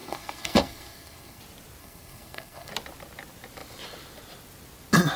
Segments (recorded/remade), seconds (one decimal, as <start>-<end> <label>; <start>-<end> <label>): 0.0-1.4 remade; 1.4-1.8 recorded; 1.8-2.7 remade; 2.7-5.2 recorded